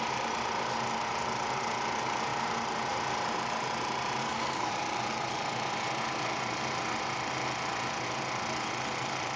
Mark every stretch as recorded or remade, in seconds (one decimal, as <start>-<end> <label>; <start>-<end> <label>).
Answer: 0.0-4.2 recorded; 4.2-4.7 remade; 4.7-9.4 recorded